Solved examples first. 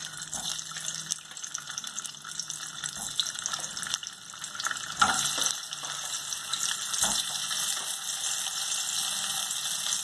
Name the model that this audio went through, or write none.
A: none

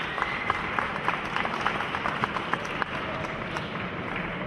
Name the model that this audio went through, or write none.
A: none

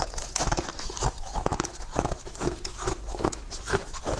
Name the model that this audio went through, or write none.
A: autoencoder, DAC-VAE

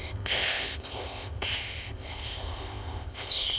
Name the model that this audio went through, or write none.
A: codec, ZipCodec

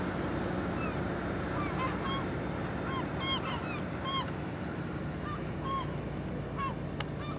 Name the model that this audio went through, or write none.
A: none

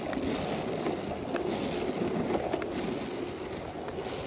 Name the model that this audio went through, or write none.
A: none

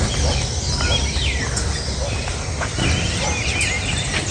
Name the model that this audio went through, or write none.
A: none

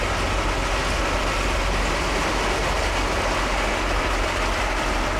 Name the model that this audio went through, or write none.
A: none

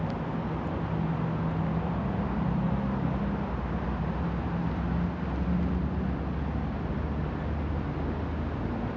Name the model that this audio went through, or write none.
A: none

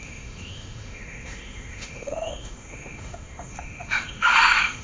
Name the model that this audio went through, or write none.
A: autoencoder, DAC-VAE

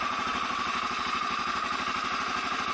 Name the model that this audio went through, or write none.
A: none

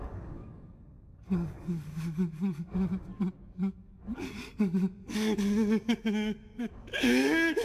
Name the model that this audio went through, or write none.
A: codec, DAC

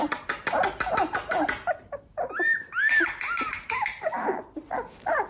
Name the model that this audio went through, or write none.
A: none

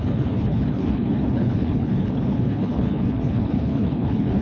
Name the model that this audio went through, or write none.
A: codec, HILCodec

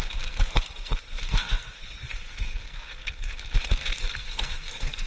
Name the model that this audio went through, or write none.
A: codec, SNAC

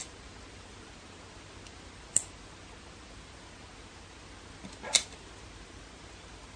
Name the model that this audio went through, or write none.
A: none